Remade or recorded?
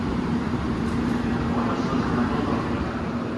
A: remade